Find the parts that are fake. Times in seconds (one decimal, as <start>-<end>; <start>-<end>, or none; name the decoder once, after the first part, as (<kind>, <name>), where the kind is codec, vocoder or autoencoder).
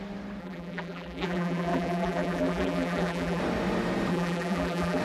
0.4-3.4 (vocoder, BigVGAN v2); 4.1-5.0